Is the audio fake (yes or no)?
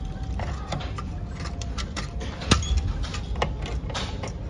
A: no